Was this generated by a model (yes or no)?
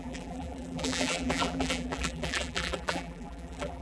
yes